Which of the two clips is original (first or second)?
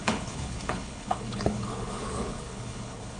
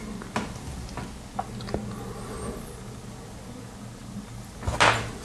second